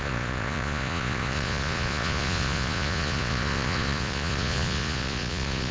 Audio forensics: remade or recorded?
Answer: remade